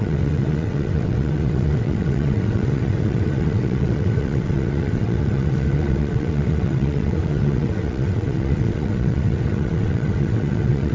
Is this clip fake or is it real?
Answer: fake